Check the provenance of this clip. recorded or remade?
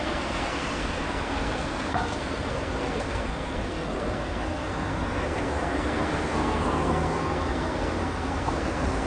remade